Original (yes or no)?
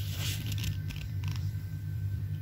no